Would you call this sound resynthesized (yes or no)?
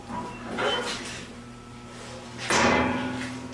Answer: no